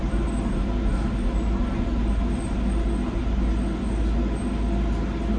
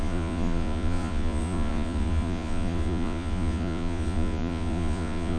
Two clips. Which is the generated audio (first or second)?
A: second